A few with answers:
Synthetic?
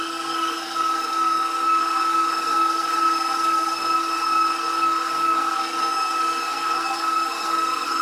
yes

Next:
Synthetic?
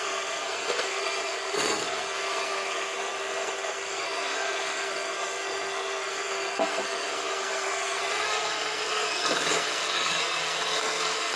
yes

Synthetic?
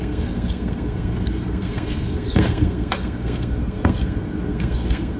yes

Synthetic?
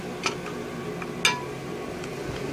no